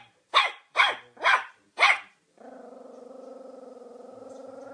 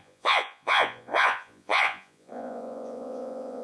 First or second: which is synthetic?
second